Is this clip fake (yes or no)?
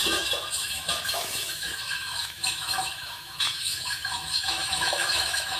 yes